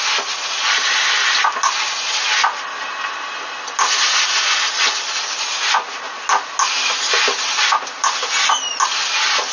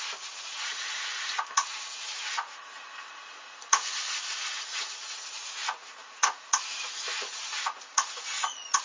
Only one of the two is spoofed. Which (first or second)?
second